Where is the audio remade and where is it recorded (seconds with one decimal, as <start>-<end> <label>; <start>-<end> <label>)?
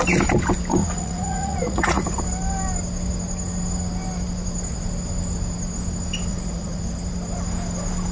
0.0-0.8 recorded; 0.8-2.2 remade; 2.2-6.3 recorded; 6.3-6.8 remade; 6.8-8.1 recorded